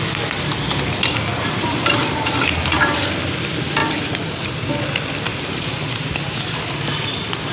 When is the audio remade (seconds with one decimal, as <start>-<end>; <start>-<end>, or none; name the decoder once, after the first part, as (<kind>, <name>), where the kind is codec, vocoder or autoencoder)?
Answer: 1.3-2.6 (vocoder, BigVGAN v2); 3.8-4.7; 5.3-5.8